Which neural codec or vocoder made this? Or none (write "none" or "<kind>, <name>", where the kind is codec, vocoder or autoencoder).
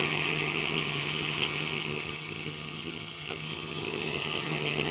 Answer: vocoder, HiFi-GAN